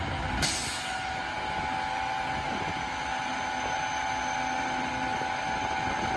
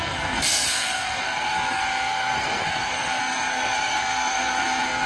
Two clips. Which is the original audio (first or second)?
first